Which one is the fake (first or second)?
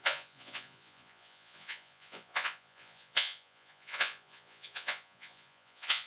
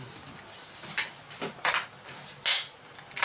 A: first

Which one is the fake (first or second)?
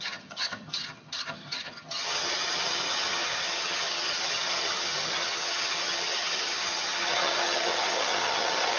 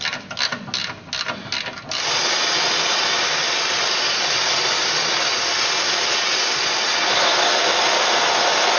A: first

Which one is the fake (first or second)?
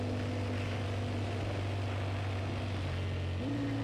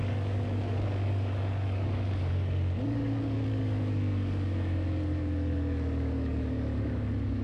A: second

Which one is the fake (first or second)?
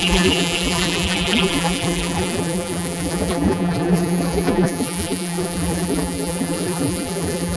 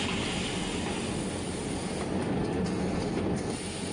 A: first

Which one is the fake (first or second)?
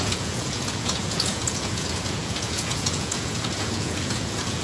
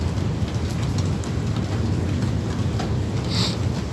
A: first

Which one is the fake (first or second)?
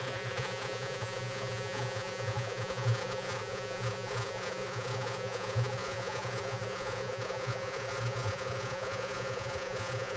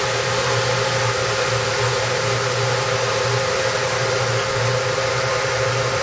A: first